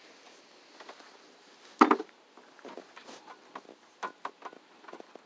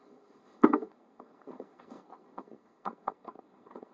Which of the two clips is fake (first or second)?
second